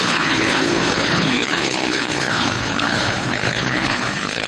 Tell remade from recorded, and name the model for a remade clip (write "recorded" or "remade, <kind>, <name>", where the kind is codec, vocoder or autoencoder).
remade, codec, HILCodec